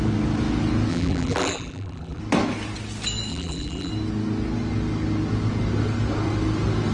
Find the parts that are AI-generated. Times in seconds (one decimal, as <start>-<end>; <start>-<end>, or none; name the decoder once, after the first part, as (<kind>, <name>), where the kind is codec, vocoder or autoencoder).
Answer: 0.9-2.2 (vocoder, BigVGAN v2); 3.3-3.9